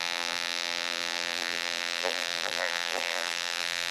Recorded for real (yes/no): no